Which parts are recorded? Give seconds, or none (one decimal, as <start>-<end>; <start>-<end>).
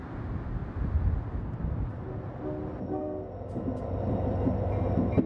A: 0.0-5.3